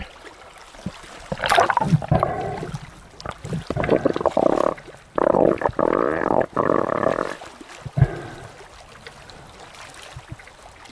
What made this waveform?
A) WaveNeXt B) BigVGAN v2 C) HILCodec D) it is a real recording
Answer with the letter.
D